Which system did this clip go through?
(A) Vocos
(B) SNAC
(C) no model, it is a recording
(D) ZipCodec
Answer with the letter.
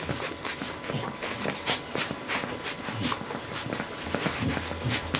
C